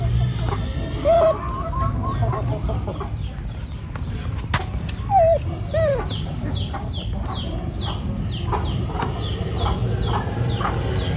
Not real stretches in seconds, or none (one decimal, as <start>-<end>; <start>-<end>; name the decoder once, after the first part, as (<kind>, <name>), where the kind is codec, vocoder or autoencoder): none